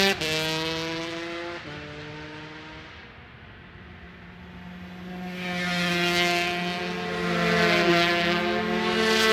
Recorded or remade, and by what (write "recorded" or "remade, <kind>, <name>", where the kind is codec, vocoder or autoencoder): recorded